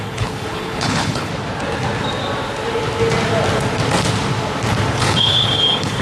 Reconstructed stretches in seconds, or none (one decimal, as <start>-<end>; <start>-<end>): 0.0-1.3; 4.9-6.0